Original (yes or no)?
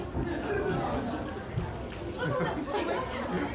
yes